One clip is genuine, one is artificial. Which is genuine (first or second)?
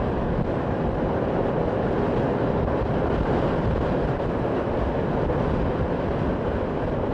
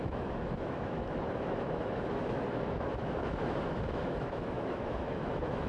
first